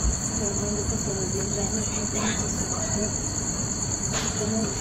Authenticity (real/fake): fake